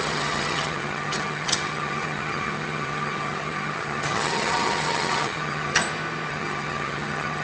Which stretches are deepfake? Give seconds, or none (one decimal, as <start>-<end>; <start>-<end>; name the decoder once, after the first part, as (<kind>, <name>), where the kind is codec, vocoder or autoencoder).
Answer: 0.0-5.8 (vocoder, HiFi-GAN); 6.3-7.4